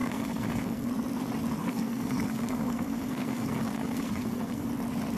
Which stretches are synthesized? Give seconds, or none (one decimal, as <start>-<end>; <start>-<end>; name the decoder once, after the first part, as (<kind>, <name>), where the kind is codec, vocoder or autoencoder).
0.0-0.9 (codec, SNAC); 1.6-4.7